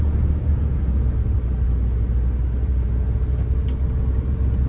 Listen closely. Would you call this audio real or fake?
real